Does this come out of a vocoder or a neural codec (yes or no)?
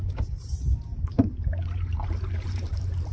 yes